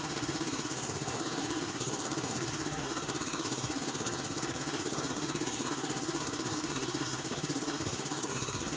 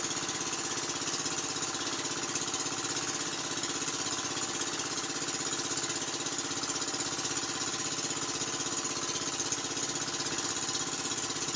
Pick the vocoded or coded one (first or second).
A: first